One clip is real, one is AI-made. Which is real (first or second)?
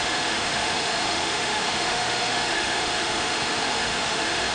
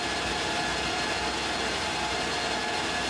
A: second